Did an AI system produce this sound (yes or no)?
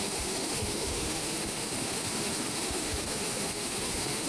yes